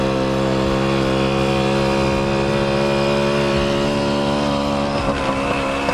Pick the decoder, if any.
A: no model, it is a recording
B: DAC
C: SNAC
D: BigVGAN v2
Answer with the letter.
A